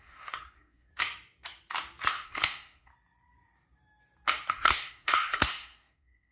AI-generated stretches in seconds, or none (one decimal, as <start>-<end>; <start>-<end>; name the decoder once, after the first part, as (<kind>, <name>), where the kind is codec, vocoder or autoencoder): 0.0-0.9 (codec, SNAC); 2.1-2.9; 4.5-6.3